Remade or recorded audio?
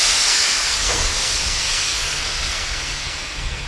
remade